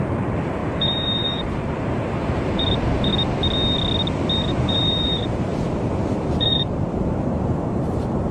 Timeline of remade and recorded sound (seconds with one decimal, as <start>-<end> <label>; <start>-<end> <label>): 0.0-3.1 remade; 3.1-4.6 recorded; 4.6-5.5 remade; 5.5-6.1 recorded; 6.1-8.3 remade